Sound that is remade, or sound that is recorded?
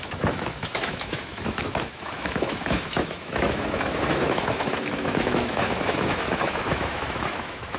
remade